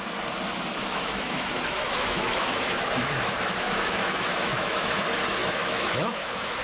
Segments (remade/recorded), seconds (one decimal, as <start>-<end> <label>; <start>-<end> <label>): 0.0-0.9 recorded; 0.9-4.9 remade; 4.9-5.4 recorded; 5.4-6.6 remade